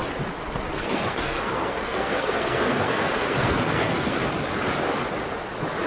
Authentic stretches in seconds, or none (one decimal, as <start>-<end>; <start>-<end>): 0.0-0.8; 4.3-5.9